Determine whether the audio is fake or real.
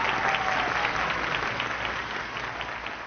real